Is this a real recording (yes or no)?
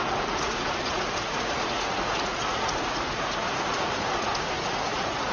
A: no